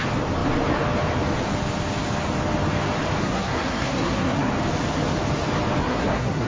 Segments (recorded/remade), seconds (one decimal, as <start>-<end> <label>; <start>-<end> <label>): 0.0-3.2 recorded; 3.2-4.5 remade; 4.5-5.8 recorded; 5.8-6.5 remade